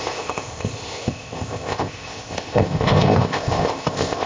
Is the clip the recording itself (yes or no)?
no